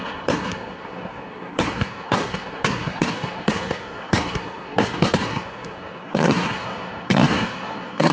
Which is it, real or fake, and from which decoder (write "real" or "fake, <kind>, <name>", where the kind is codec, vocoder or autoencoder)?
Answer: fake, codec, SNAC